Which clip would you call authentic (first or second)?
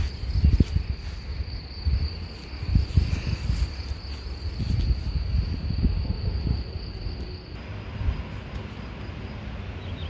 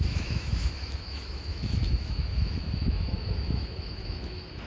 first